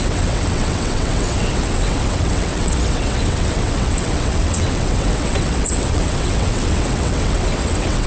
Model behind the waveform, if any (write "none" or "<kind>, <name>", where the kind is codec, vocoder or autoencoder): vocoder, WaveNeXt